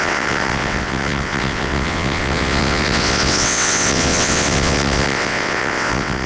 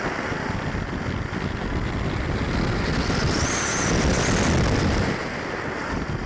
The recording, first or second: second